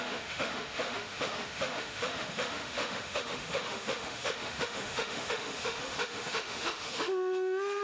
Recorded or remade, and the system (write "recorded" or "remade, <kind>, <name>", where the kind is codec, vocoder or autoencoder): remade, autoencoder, DAC-VAE